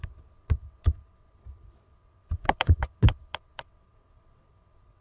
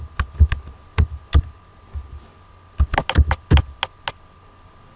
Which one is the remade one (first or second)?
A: first